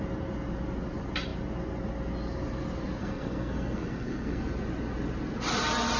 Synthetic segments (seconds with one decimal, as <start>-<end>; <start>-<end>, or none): 3.0-4.4